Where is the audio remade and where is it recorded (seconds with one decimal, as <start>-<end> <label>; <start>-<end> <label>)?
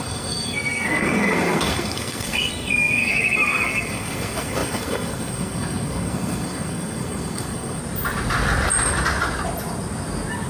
0.0-7.8 remade; 7.8-10.5 recorded